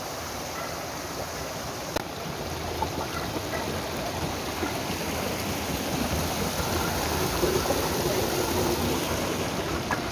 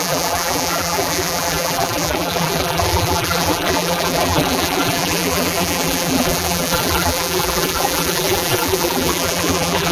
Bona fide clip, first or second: first